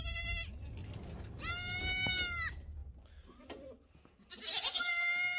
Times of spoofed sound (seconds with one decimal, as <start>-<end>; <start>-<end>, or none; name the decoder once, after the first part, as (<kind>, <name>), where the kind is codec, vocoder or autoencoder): none